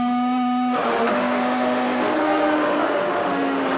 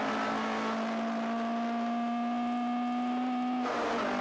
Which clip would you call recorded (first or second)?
second